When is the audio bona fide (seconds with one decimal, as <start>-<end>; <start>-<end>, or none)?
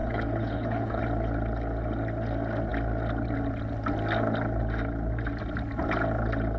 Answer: 1.0-6.6